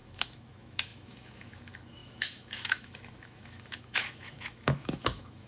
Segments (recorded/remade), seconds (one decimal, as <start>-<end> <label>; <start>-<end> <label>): 0.0-5.5 remade